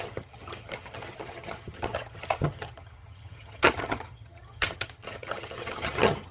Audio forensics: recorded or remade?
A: remade